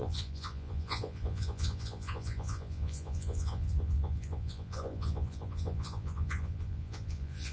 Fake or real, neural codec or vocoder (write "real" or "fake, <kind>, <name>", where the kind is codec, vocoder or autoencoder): fake, vocoder, Vocos